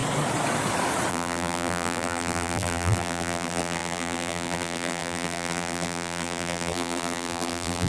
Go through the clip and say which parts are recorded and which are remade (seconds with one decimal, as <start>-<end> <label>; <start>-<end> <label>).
0.0-1.1 recorded; 1.1-7.9 remade